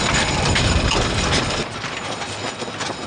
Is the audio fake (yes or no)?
no